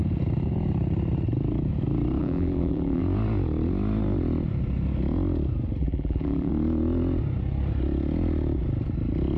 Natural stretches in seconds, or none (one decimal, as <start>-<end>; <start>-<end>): 0.0-2.2; 3.0-5.8; 6.5-9.4